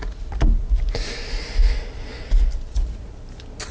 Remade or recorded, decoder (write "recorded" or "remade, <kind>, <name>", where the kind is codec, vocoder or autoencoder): recorded